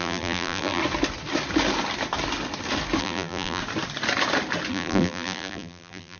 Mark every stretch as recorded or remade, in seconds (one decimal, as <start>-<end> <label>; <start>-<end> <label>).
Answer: 0.0-0.8 remade; 0.8-3.0 recorded; 3.0-3.6 remade; 3.6-4.7 recorded; 4.7-6.2 remade